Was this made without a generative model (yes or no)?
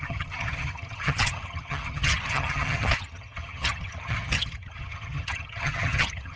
no